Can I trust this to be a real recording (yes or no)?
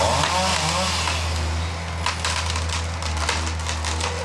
yes